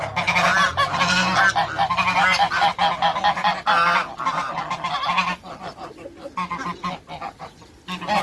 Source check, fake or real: real